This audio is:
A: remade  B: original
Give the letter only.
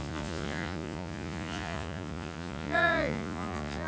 A